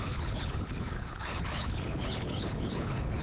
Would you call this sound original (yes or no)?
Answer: no